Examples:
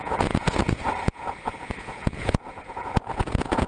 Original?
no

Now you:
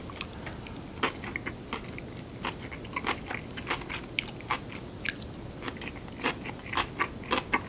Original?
yes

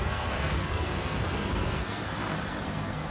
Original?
no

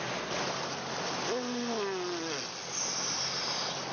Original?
yes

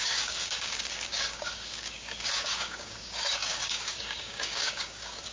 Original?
no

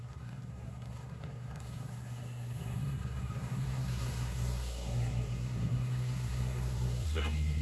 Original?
no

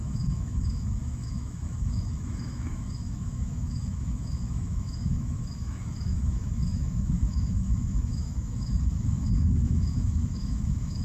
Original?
no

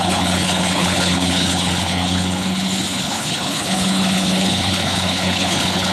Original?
no